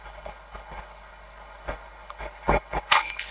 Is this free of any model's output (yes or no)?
no